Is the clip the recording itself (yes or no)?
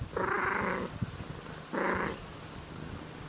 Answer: yes